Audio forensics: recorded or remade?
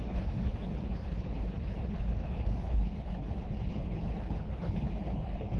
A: remade